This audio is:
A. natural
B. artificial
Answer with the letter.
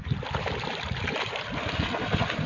A